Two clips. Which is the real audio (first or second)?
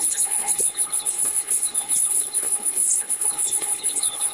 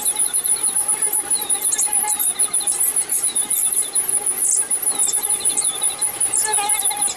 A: second